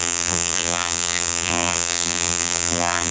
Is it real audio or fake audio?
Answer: fake